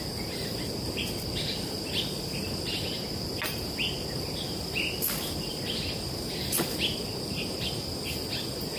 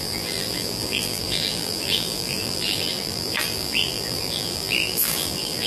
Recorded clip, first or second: first